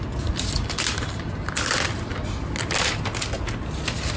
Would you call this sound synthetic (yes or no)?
no